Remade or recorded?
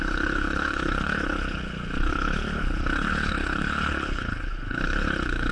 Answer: remade